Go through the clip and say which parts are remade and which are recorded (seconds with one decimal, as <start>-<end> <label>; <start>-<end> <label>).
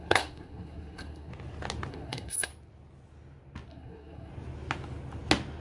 0.0-1.3 remade; 1.3-1.9 recorded; 1.9-2.5 remade; 2.5-3.7 recorded; 3.7-4.3 remade; 4.3-5.6 recorded